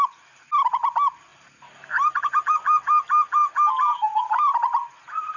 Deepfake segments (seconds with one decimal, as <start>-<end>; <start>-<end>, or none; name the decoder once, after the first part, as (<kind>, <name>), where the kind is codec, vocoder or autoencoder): none

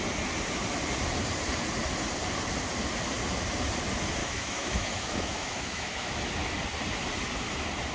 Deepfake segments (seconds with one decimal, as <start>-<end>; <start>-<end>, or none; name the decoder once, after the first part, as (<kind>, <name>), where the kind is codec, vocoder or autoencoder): 4.2-6.1 (autoencoder, DAC-VAE)

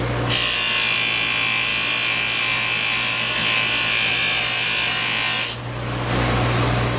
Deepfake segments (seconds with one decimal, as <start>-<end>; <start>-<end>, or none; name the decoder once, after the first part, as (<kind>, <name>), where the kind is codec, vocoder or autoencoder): none